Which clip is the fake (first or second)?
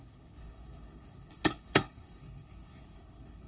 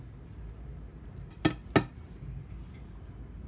first